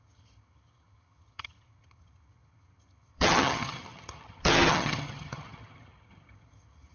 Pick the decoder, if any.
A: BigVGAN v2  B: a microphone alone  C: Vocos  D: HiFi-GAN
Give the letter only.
D